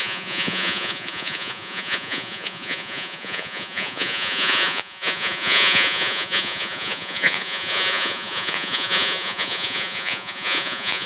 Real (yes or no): no